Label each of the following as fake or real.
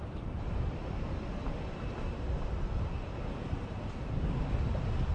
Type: fake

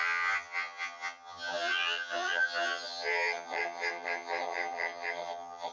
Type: fake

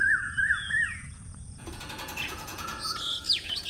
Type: fake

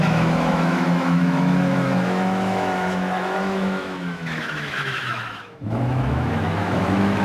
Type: fake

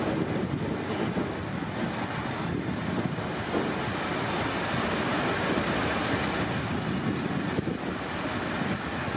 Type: real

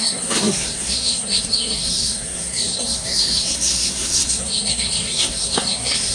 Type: fake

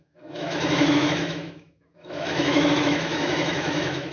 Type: fake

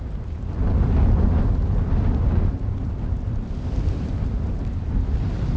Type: fake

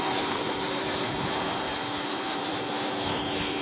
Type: real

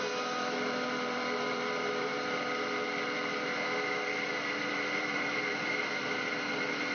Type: fake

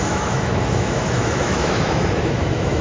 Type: fake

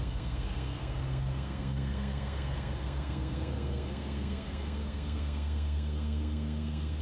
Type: fake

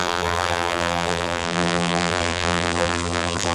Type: fake